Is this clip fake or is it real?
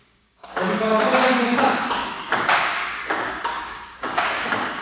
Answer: fake